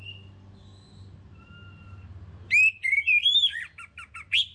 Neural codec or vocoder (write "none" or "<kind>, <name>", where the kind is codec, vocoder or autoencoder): none